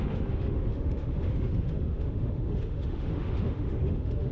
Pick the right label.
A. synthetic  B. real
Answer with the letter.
A